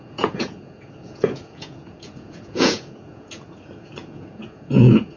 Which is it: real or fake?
fake